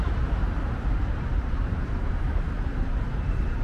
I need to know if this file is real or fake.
fake